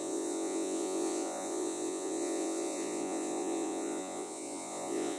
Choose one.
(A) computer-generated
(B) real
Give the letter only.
A